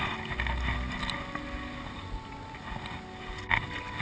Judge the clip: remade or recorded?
recorded